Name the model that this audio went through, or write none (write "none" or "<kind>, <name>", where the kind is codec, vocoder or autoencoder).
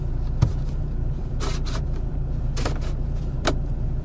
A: vocoder, BigVGAN v2